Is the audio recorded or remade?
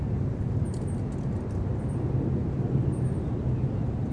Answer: recorded